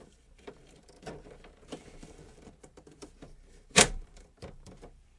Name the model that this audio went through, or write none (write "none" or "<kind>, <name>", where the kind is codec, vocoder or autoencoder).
vocoder, BigVGAN v2